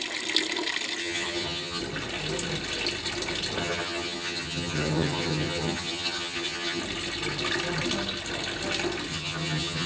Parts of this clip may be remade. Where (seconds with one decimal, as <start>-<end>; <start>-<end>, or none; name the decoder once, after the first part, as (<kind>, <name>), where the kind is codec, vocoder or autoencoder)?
1.0-1.8 (vocoder, HiFi-GAN); 3.6-6.8; 9.1-9.9

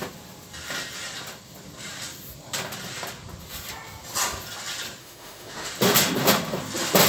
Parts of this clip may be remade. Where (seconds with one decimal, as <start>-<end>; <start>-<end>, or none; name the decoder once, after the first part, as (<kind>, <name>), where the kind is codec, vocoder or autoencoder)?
5.0-5.7 (autoencoder, DAC-VAE)